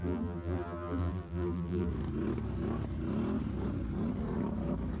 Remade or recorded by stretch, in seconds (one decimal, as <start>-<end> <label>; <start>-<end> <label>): 0.0-1.9 remade; 1.9-5.0 recorded